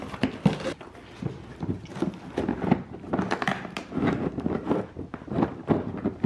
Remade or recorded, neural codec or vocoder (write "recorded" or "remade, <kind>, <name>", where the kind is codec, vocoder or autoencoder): recorded